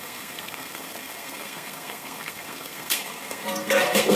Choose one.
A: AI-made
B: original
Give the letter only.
A